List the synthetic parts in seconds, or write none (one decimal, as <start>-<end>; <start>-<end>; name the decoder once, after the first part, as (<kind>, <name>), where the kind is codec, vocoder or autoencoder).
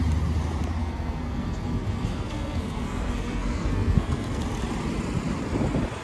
0.8-4.4 (codec, SNAC)